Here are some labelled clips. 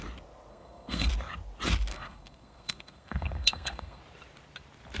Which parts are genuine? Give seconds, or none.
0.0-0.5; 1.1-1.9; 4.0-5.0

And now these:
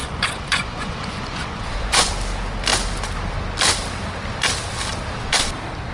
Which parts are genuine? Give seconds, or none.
2.1-5.9

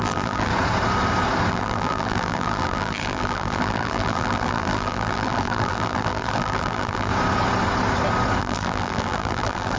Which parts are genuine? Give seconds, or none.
0.5-1.5; 7.1-8.4